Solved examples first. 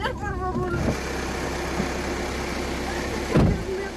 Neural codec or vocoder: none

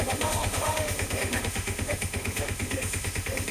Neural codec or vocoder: autoencoder, DAC-VAE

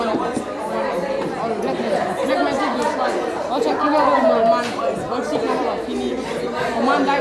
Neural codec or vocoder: none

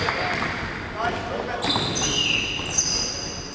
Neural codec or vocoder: none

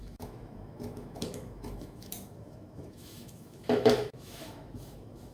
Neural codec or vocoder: autoencoder, DAC-VAE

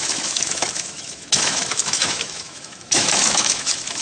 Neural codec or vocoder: autoencoder, DAC-VAE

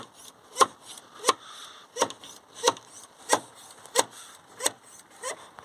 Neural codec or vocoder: none